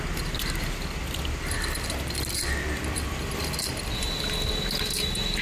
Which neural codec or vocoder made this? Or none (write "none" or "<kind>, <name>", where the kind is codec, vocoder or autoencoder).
none